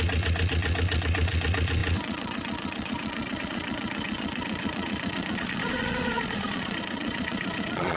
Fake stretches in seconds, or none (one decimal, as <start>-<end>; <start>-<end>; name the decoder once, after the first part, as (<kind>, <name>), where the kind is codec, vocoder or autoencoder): 0.0-8.0 (vocoder, Vocos)

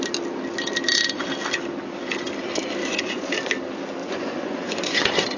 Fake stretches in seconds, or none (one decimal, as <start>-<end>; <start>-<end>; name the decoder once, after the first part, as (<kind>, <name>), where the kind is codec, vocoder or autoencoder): 2.8-3.5 (vocoder, Vocos); 4.0-5.0

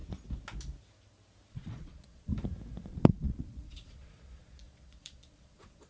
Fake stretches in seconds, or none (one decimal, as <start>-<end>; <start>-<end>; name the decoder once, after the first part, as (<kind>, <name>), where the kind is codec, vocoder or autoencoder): 1.5-2.3 (vocoder, Vocos); 2.9-5.9

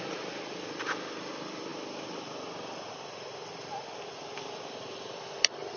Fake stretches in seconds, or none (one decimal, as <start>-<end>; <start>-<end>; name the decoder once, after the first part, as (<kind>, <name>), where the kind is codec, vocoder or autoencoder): none

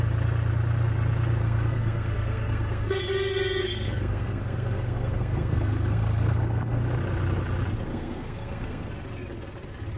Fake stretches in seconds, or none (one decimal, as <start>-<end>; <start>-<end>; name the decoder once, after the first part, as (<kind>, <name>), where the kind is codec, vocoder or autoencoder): 1.4-3.0 (codec, SNAC); 3.6-6.8; 7.9-8.9

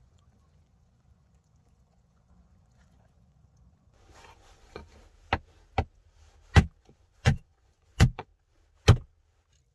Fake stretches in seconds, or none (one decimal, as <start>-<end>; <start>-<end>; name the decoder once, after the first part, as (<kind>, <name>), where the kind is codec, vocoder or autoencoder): 0.0-4.8 (vocoder, Vocos); 6.8-8.3

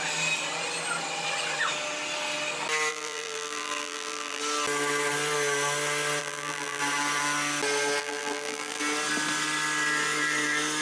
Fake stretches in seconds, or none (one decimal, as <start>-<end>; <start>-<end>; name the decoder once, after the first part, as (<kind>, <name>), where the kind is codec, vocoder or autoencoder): 2.9-4.4 (vocoder, BigVGAN v2); 6.2-6.8; 8.0-8.8

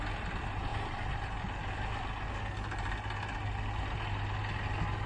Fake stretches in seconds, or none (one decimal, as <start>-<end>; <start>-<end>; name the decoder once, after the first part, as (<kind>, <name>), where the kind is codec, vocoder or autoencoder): none